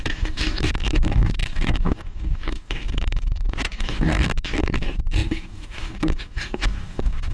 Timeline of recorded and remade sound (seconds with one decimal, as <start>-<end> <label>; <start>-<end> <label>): 0.0-7.3 remade